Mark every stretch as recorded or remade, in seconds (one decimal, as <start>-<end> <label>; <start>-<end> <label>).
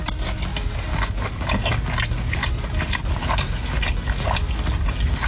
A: 0.0-5.3 recorded